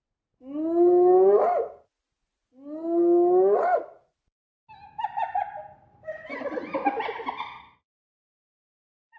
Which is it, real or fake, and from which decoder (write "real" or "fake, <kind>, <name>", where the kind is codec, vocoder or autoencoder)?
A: real